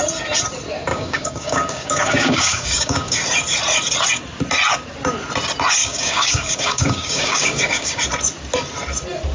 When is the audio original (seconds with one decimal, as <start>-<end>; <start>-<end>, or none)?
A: 0.0-0.9; 3.2-5.8; 8.0-9.3